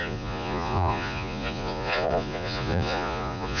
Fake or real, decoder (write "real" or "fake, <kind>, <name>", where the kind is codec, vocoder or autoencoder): fake, vocoder, Vocos